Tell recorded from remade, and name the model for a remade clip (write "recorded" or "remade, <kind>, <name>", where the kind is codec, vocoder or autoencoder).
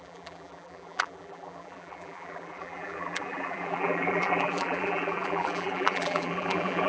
remade, vocoder, BigVGAN v2